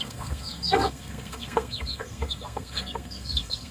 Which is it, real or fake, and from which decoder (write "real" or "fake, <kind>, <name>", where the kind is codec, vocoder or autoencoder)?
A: fake, codec, SNAC